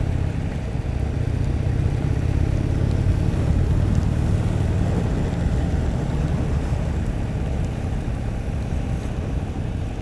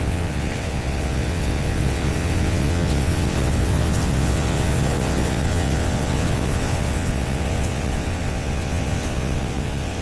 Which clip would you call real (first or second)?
first